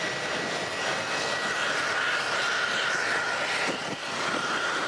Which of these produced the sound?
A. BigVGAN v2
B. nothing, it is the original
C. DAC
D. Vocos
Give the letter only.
B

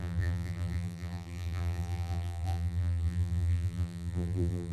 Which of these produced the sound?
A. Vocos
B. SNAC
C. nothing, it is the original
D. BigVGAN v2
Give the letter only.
D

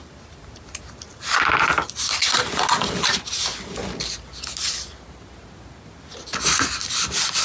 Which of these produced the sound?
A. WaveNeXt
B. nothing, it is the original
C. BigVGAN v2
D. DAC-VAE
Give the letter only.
B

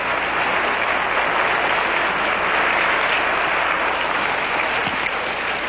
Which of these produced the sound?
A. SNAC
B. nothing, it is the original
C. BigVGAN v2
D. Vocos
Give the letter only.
B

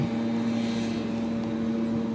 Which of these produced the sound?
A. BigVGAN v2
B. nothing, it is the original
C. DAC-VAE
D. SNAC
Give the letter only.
B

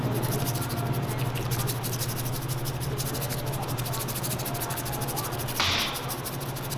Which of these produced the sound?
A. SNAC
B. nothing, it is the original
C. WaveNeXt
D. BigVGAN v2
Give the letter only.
B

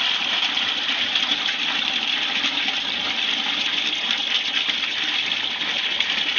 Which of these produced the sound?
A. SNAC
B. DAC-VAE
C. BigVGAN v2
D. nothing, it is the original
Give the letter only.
C